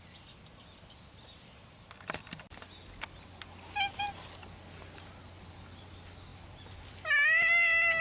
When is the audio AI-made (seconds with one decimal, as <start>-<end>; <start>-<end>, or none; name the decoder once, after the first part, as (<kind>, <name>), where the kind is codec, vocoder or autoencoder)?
none